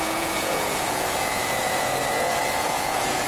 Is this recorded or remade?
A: remade